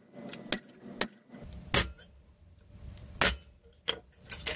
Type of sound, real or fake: real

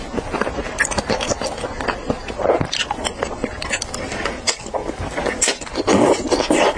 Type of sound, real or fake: real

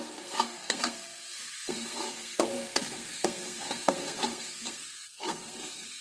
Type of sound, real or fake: fake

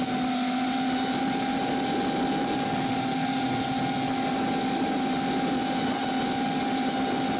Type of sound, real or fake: real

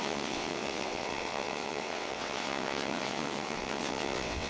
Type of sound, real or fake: fake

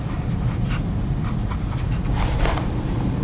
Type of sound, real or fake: fake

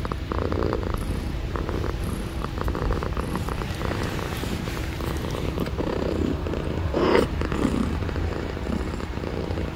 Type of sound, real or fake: fake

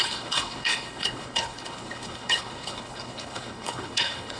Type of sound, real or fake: fake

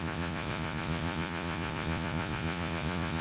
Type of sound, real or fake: fake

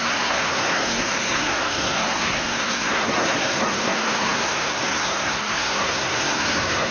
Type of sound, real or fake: fake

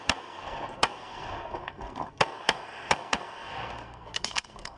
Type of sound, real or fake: fake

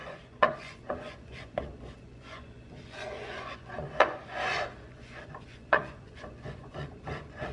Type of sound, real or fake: fake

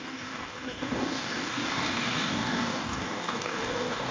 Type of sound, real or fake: fake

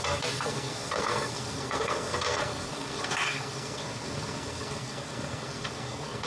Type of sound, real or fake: fake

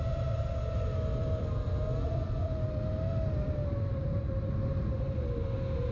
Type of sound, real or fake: real